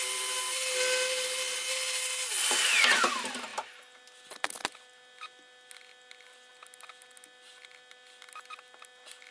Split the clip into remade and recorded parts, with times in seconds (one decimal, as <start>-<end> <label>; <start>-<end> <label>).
0.0-9.3 recorded